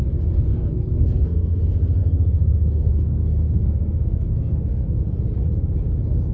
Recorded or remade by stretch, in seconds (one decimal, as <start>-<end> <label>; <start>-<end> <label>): 0.0-0.5 recorded; 0.5-1.6 remade; 1.6-2.0 recorded; 2.0-5.0 remade; 5.0-6.3 recorded